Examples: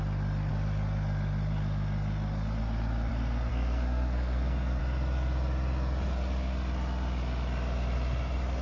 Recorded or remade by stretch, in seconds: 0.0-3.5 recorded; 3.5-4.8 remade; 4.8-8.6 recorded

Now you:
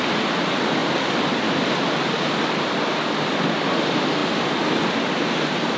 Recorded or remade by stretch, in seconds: 0.0-5.8 recorded

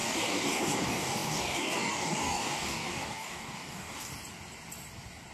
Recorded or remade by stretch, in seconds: 0.0-4.1 remade; 4.1-5.3 recorded

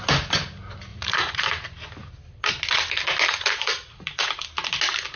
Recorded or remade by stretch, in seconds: 0.0-0.9 recorded; 0.9-1.4 remade; 1.4-3.7 recorded; 3.7-4.3 remade; 4.3-5.2 recorded

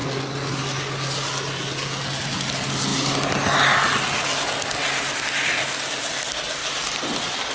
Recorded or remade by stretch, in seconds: 0.0-7.5 recorded